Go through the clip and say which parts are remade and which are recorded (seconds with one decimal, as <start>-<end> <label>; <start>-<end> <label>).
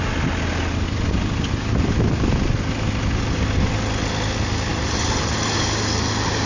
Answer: 0.0-6.5 recorded